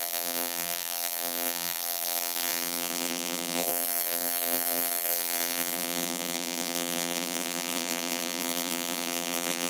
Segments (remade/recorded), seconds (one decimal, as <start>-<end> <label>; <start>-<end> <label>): 0.0-9.7 remade